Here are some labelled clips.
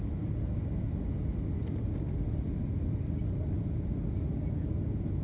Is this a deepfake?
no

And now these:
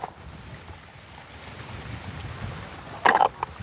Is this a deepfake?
no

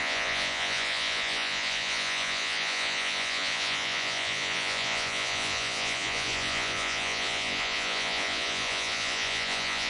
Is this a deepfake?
yes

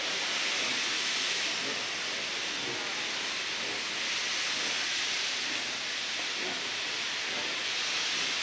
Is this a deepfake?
no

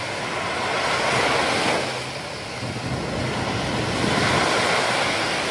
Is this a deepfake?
no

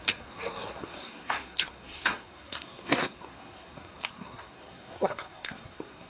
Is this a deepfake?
yes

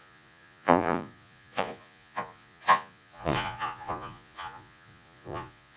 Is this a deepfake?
yes